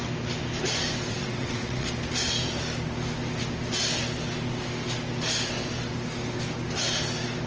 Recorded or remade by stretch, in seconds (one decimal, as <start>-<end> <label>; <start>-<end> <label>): 0.0-1.1 recorded; 1.1-1.9 remade; 1.9-7.5 recorded